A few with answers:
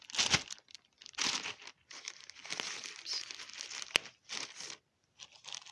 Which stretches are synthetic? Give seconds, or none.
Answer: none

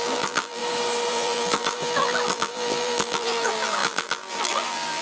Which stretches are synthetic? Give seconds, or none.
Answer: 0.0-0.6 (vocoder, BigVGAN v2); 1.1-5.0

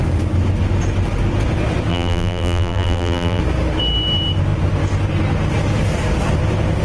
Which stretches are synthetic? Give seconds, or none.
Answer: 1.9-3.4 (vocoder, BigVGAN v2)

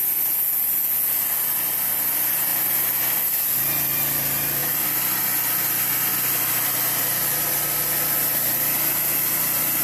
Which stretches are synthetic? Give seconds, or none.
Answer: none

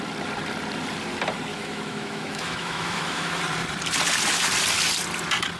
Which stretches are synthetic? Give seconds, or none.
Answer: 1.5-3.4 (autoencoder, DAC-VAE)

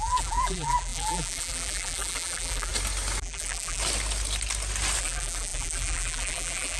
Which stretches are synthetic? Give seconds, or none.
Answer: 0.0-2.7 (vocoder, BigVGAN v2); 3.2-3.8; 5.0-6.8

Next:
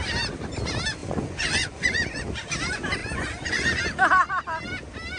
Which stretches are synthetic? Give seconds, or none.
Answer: 1.0-2.2 (vocoder, Vocos); 3.0-3.8

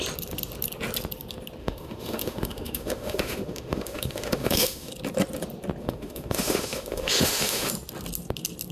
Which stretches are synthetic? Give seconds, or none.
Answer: 1.6-4.9 (autoencoder, DAC-VAE); 5.8-7.7